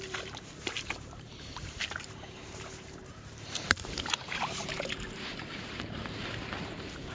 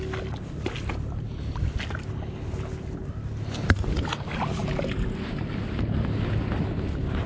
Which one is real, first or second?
second